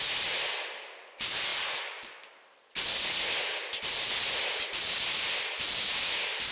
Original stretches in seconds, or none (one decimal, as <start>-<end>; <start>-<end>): 0.0-6.5